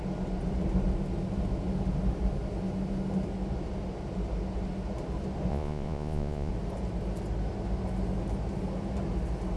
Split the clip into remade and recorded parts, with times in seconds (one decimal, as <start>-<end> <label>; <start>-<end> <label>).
0.0-5.5 recorded; 5.5-6.5 remade; 6.5-9.6 recorded